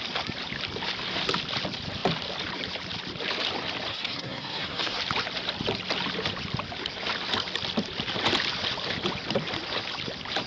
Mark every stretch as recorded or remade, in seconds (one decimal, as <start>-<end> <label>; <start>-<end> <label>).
0.0-3.9 recorded; 3.9-5.0 remade; 5.0-10.5 recorded